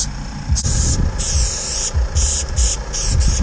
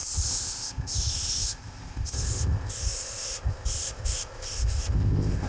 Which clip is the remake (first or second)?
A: second